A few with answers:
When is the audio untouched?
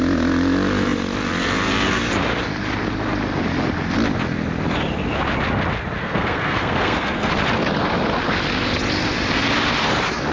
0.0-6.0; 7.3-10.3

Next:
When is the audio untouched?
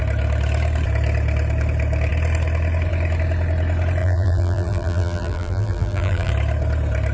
0.0-4.0; 6.3-7.1